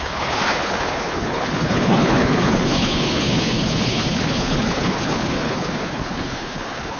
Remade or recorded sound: remade